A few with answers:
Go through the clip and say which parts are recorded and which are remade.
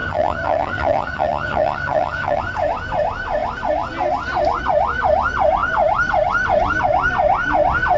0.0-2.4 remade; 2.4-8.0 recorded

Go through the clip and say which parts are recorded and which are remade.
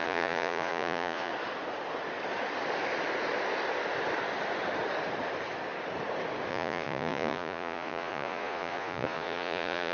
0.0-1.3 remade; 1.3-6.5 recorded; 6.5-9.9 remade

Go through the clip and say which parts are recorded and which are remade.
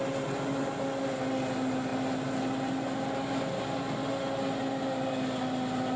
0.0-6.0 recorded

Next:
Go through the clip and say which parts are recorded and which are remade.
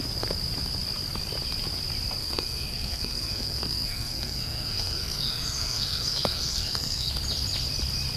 0.0-2.2 recorded; 2.2-7.1 remade; 7.1-8.2 recorded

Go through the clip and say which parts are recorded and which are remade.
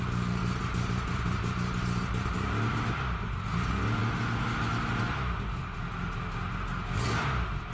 0.0-7.7 recorded